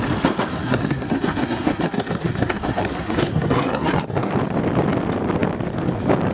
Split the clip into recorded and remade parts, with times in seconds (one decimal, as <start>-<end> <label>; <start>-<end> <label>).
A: 0.0-0.5 recorded; 0.5-4.3 remade; 4.3-6.3 recorded